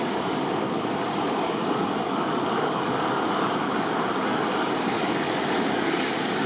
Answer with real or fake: fake